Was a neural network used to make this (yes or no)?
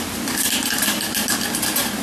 no